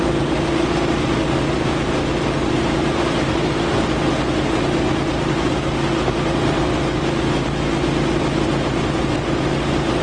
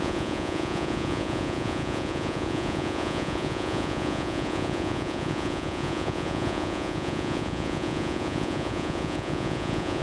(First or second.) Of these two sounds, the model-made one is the second